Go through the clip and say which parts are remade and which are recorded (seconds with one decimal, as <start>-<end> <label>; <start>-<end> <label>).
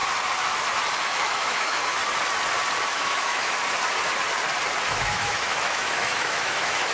0.0-1.0 recorded; 1.0-2.0 remade; 2.0-2.9 recorded; 2.9-3.6 remade; 3.6-4.8 recorded; 4.8-6.9 remade